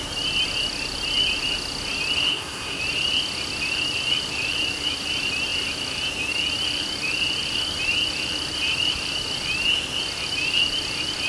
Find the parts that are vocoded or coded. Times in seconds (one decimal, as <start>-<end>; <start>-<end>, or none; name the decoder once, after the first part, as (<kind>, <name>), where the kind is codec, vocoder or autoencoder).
2.3-2.8 (codec, SNAC)